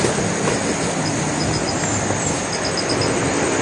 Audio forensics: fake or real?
real